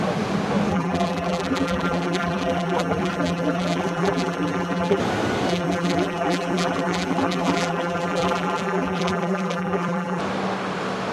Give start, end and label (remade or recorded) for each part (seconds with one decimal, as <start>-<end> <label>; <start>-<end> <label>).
0.0-0.7 recorded; 0.7-5.0 remade; 5.0-5.5 recorded; 5.5-10.2 remade; 10.2-11.1 recorded